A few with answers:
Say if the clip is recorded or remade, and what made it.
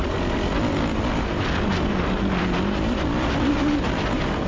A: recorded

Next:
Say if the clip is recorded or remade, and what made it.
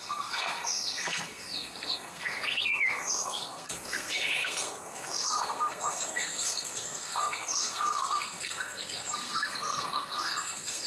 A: remade, codec, SNAC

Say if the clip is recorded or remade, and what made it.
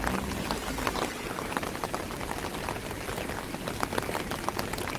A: recorded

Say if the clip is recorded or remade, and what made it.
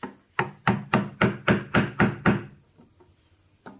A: recorded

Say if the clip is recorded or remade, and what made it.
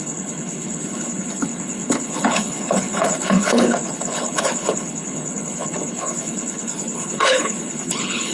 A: remade, codec, HILCodec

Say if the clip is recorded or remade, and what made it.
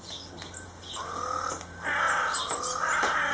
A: recorded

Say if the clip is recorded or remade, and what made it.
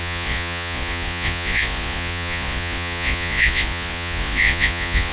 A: remade, vocoder, Vocos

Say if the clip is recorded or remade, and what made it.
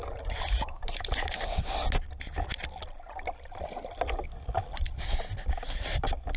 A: recorded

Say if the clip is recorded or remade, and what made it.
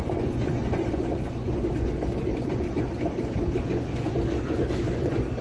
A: remade, vocoder, Vocos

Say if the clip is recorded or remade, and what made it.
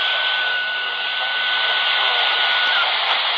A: recorded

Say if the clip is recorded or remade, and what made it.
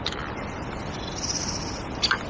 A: recorded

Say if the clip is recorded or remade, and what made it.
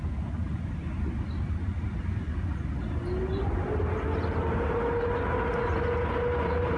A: recorded